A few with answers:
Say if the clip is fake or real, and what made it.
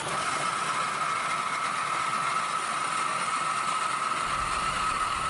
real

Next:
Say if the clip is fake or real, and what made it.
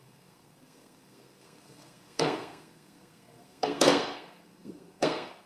fake, codec, SNAC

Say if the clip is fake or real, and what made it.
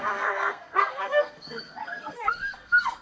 fake, codec, SNAC